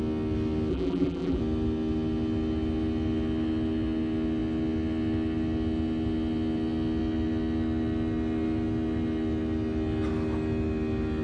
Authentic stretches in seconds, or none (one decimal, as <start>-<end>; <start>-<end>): 0.0-0.7; 1.4-11.2